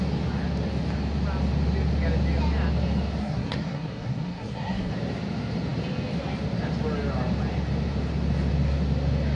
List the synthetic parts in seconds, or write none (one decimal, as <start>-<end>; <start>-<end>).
3.2-4.9